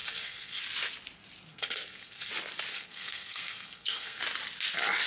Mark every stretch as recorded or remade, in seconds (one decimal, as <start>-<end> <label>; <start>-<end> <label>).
0.0-0.6 remade; 0.6-1.5 recorded; 1.5-2.3 remade; 2.3-2.7 recorded; 2.7-4.2 remade; 4.2-5.1 recorded